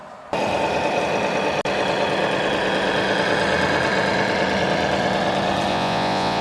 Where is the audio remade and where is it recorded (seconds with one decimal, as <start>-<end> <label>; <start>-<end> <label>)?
0.0-5.7 recorded; 5.7-6.4 remade

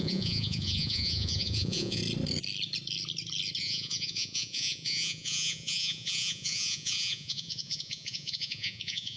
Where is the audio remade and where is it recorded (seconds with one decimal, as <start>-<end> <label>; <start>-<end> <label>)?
0.0-2.0 remade; 2.0-3.6 recorded; 3.6-9.2 remade

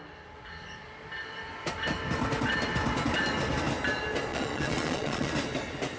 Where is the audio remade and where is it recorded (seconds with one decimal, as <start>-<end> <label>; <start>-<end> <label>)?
0.0-4.3 recorded; 4.3-5.3 remade; 5.3-6.0 recorded

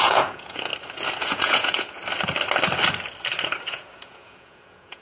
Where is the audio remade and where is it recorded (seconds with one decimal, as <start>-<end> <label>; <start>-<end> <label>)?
0.0-0.7 remade; 0.7-1.2 recorded; 1.2-2.0 remade; 2.0-3.7 recorded; 3.7-5.0 remade

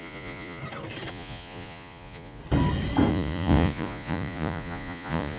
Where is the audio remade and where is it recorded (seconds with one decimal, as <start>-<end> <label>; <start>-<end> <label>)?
0.0-0.6 remade; 0.6-1.1 recorded; 1.1-2.4 remade; 2.4-3.1 recorded; 3.1-5.4 remade

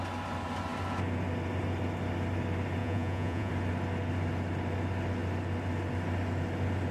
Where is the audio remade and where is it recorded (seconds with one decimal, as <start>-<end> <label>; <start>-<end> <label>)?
0.0-2.8 recorded; 2.8-3.5 remade; 3.5-6.9 recorded

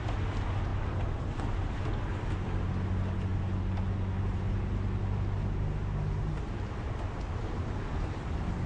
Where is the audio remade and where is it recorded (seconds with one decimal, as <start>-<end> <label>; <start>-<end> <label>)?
0.0-8.7 recorded

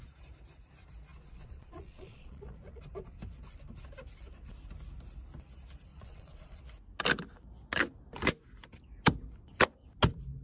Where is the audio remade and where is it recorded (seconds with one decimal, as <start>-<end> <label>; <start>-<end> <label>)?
0.0-1.1 recorded; 1.1-2.8 remade; 2.8-5.9 recorded; 5.9-6.6 remade; 6.6-10.4 recorded